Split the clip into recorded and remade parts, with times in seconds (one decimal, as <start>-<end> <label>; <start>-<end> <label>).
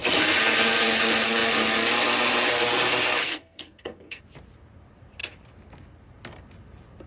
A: 0.0-3.2 recorded; 3.2-4.2 remade; 4.2-7.1 recorded